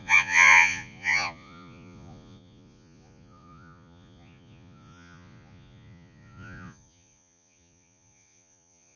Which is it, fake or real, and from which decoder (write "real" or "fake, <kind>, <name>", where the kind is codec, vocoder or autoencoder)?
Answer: fake, vocoder, Vocos